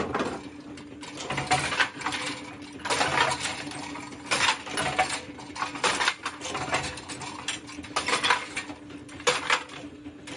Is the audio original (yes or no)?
yes